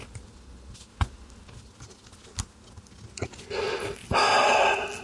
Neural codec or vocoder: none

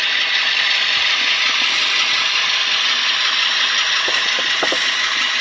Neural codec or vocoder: none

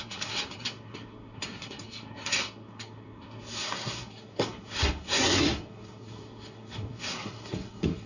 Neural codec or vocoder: codec, SNAC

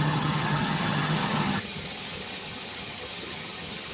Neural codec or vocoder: vocoder, HiFi-GAN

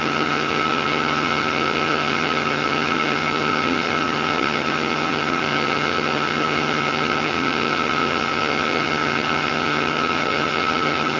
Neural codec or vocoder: vocoder, HiFi-GAN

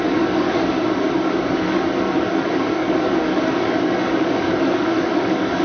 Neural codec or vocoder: codec, DAC